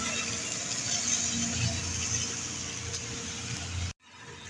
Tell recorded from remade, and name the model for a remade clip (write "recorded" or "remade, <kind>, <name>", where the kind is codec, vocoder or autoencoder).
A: recorded